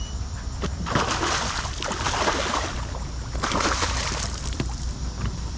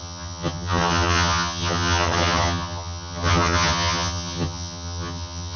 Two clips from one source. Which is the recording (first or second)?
first